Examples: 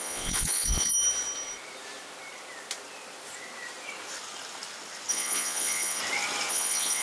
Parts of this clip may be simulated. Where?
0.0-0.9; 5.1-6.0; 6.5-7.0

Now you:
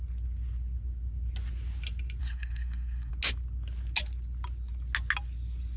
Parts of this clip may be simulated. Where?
2.2-3.1

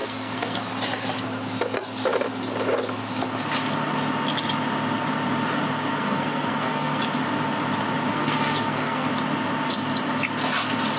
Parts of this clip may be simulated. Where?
0.0-0.6; 5.9-7.0; 8.1-9.1

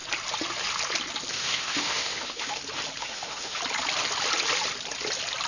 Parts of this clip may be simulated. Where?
1.3-2.6; 3.0-3.6

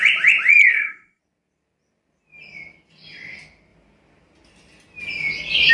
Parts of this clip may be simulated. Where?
0.7-1.2